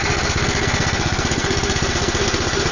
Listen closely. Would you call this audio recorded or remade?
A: remade